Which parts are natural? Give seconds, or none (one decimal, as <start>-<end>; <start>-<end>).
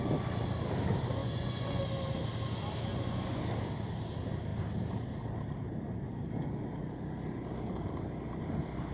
0.0-1.2; 1.8-2.9; 3.4-8.9